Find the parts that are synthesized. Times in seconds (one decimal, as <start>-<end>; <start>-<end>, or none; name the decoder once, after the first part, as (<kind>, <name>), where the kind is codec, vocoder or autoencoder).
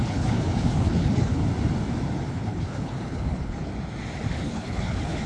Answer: 0.0-1.4 (codec, HILCodec); 2.3-3.7; 4.3-5.3